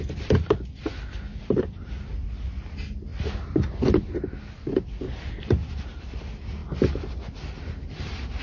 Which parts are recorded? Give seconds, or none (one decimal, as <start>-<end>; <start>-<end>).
0.0-1.3; 1.9-8.4